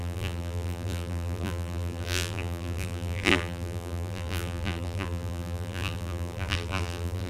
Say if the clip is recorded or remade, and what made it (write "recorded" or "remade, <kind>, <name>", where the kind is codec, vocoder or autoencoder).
remade, vocoder, BigVGAN v2